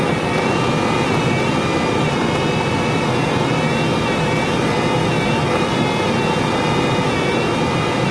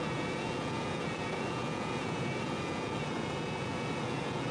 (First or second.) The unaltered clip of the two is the first